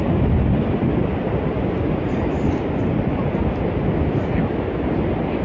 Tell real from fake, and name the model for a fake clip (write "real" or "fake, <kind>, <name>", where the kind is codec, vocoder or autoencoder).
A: real